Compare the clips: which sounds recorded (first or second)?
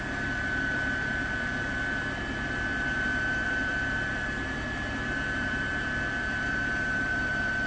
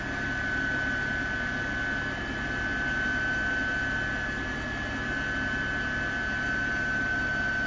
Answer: second